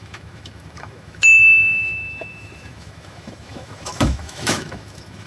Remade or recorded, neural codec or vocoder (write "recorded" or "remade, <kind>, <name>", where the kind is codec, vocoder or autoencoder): remade, autoencoder, DAC-VAE